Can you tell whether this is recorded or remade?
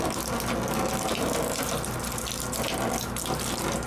recorded